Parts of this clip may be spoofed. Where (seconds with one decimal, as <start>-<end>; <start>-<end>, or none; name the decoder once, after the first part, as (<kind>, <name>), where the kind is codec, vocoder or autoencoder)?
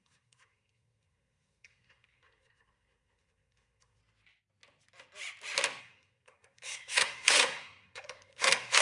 0.0-4.0 (codec, SNAC); 5.8-8.8